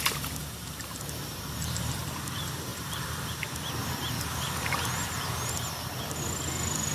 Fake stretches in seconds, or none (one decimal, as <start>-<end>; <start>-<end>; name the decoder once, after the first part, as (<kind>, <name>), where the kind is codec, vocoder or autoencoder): 0.4-2.0 (vocoder, BigVGAN v2); 2.7-3.3; 3.8-6.0